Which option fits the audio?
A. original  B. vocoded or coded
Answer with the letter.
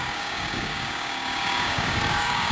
B